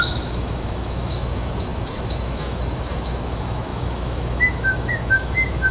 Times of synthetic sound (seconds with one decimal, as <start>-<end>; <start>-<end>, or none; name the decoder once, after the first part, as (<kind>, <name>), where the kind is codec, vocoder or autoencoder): 0.0-5.7 (autoencoder, DAC-VAE)